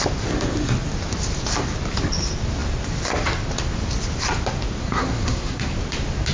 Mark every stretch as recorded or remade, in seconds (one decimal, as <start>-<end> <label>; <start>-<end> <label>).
0.0-4.8 recorded; 4.8-5.7 remade; 5.7-6.3 recorded